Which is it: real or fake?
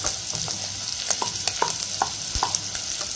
real